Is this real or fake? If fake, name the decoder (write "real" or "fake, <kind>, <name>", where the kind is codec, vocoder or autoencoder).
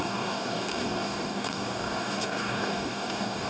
fake, codec, DAC